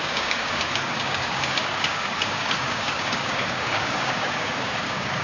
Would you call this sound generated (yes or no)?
yes